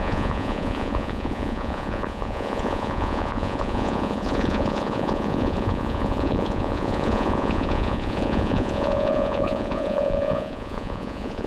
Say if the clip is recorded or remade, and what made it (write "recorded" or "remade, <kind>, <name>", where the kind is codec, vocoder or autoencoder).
remade, vocoder, Vocos